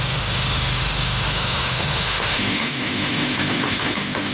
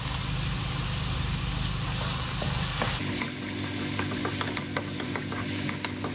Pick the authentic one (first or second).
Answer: second